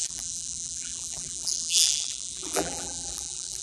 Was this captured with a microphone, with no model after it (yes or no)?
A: no